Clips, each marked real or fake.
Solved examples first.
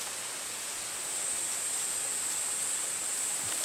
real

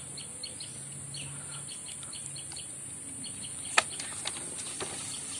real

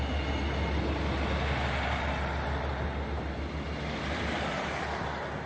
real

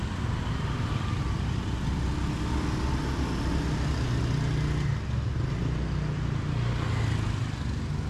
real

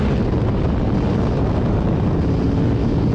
real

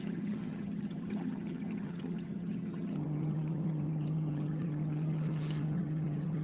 fake